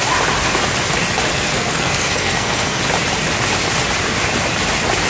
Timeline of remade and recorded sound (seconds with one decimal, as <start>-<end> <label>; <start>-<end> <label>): 0.0-1.3 recorded; 1.3-2.8 remade; 2.8-5.1 recorded